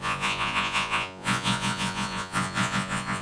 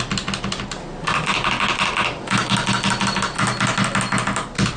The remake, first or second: first